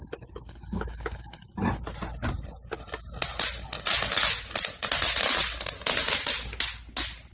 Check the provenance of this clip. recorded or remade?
recorded